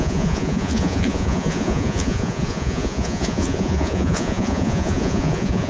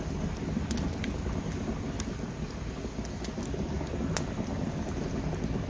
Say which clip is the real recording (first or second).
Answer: second